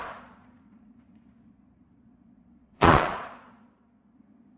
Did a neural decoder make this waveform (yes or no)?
yes